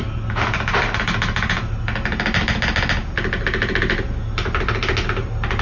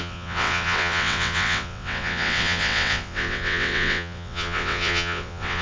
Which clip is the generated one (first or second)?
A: second